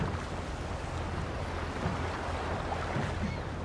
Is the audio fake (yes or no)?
no